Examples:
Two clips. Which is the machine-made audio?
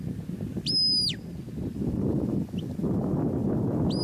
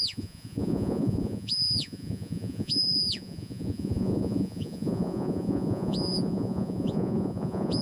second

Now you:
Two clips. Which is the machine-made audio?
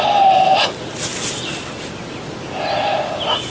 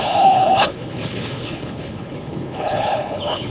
second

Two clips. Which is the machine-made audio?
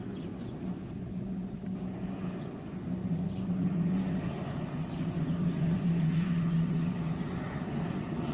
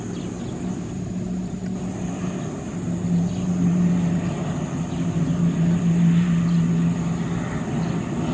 first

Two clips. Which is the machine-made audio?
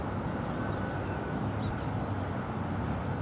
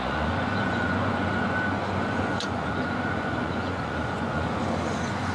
second